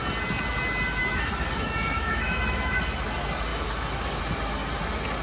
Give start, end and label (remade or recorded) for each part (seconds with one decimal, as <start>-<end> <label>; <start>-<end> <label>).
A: 0.0-1.0 recorded; 1.0-2.8 remade; 2.8-3.5 recorded; 3.5-4.2 remade; 4.2-5.2 recorded